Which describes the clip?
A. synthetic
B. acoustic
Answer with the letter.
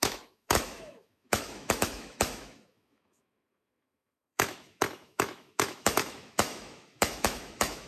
A